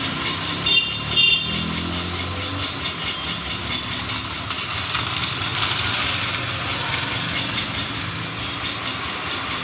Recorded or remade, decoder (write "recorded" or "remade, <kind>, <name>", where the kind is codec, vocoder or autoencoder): recorded